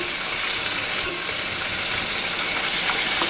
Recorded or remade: recorded